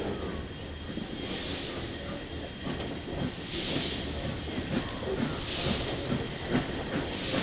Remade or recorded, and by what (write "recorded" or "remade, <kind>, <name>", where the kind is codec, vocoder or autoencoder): recorded